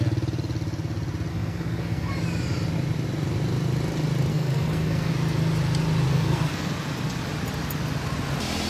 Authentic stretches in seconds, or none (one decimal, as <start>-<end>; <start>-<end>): 0.0-1.3; 2.1-4.3; 5.1-6.1; 6.7-8.7